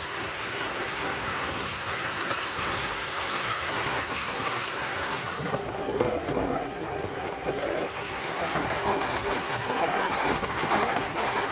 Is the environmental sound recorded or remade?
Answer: remade